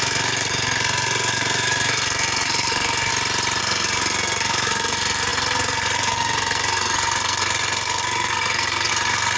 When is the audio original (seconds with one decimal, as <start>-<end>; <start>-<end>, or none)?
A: 3.1-3.6